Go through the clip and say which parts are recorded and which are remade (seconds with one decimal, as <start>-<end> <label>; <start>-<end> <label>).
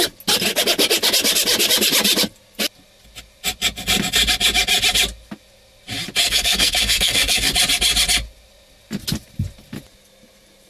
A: 0.0-6.2 recorded; 6.2-7.5 remade; 7.5-10.7 recorded